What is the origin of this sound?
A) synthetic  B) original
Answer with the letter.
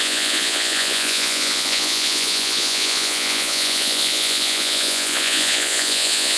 A